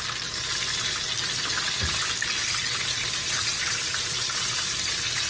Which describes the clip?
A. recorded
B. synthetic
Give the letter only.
A